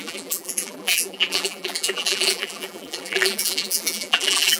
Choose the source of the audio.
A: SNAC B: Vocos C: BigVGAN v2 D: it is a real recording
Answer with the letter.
C